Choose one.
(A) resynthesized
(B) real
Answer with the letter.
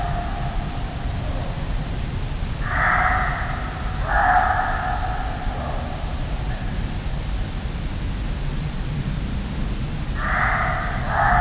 B